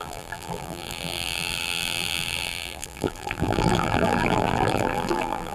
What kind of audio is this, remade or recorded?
remade